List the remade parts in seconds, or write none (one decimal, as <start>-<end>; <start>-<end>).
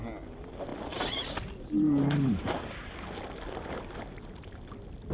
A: none